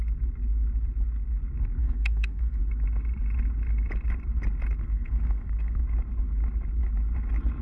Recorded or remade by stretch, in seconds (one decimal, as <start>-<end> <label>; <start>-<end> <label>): 0.0-1.8 recorded; 1.8-2.6 remade; 2.6-4.8 recorded; 4.8-5.8 remade; 5.8-7.6 recorded